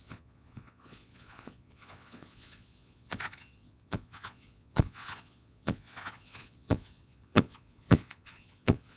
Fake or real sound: fake